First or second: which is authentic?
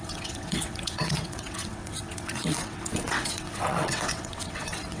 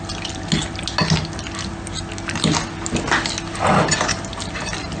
second